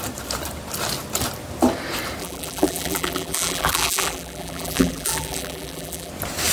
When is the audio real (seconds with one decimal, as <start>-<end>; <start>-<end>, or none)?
0.0-2.2; 6.1-6.5